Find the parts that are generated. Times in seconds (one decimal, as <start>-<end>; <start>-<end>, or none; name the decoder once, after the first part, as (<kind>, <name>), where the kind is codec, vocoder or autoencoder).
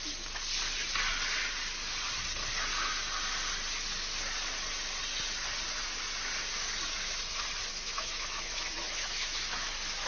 7.7-9.7 (autoencoder, DAC-VAE)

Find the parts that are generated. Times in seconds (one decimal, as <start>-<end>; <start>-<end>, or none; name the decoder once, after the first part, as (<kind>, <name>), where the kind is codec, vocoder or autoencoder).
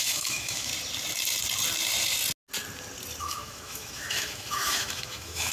0.0-0.7 (autoencoder, DAC-VAE); 3.2-5.5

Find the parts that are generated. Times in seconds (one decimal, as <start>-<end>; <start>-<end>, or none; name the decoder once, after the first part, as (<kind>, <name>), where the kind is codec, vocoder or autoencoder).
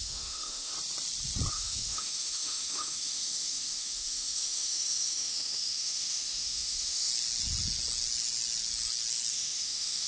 0.0-0.7 (autoencoder, DAC-VAE); 1.5-7.1; 9.3-10.1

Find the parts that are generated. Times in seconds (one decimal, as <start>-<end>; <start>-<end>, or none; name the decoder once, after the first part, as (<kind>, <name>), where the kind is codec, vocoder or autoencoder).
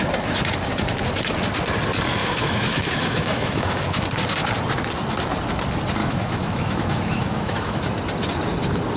2.2-4.0 (autoencoder, DAC-VAE); 6.0-7.8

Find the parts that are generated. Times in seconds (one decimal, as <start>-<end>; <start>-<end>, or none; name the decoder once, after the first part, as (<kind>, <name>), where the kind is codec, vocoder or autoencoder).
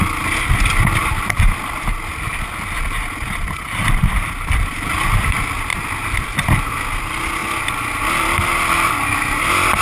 none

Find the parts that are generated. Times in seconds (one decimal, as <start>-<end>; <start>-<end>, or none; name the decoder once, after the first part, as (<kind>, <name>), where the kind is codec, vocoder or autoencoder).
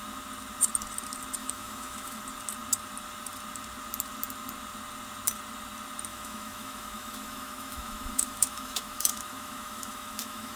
1.4-2.2 (autoencoder, DAC-VAE); 6.1-10.6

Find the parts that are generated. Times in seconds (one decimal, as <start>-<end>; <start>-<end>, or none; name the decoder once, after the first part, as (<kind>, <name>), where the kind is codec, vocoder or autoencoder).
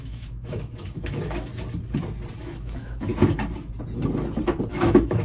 0.0-1.5 (autoencoder, DAC-VAE); 2.4-3.1; 4.7-5.2